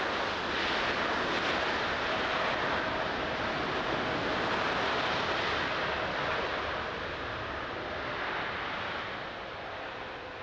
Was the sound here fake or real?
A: real